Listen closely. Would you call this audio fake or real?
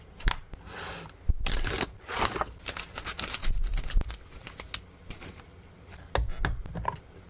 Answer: real